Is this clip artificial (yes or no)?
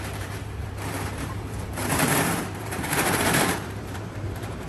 yes